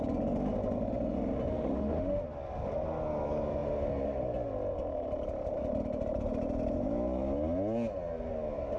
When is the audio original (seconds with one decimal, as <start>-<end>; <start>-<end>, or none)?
0.0-1.5; 2.2-8.8

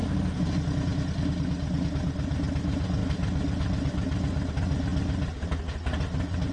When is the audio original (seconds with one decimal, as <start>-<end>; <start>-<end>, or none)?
0.0-6.5

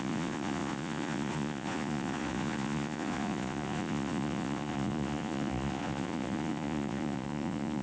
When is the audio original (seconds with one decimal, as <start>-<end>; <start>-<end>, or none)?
none

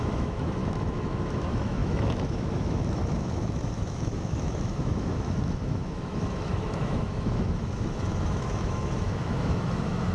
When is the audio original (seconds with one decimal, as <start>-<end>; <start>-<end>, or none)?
none

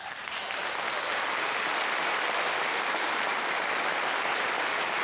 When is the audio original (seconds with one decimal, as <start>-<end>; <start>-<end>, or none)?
0.0-5.0

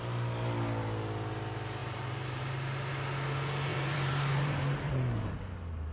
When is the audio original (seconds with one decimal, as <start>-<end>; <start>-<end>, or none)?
0.0-1.8; 2.4-3.7; 5.3-5.9